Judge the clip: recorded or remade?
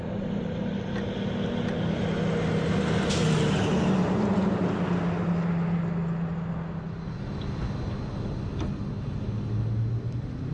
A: recorded